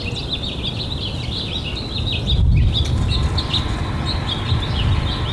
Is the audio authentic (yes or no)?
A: yes